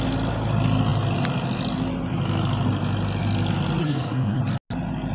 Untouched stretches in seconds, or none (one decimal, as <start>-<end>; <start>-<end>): 0.0-3.8; 4.4-5.1